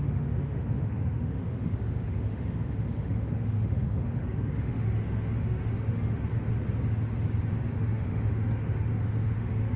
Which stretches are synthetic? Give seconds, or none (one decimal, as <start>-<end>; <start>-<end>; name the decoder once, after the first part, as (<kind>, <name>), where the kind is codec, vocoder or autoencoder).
0.0-6.3 (autoencoder, DAC-VAE); 7.5-9.8